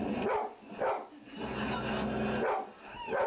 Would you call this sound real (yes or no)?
yes